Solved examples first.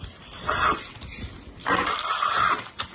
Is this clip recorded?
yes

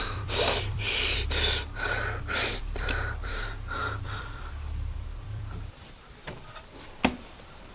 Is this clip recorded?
no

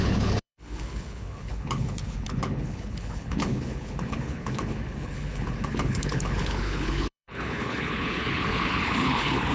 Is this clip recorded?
no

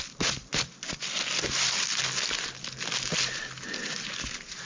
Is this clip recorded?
yes